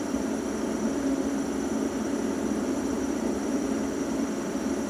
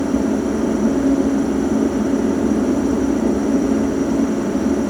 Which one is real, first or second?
second